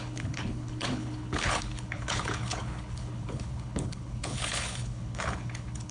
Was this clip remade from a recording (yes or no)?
yes